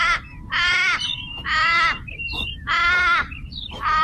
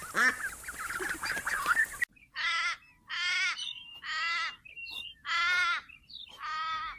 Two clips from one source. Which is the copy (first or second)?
first